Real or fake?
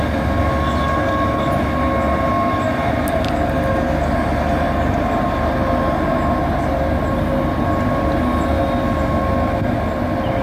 real